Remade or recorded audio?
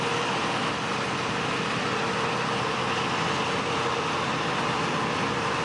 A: recorded